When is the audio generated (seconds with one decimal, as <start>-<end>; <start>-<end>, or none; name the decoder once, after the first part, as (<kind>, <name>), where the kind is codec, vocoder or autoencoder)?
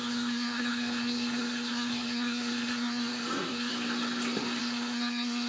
0.0-3.7 (codec, SNAC); 4.6-5.5